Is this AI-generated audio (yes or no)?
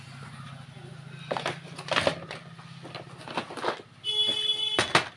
no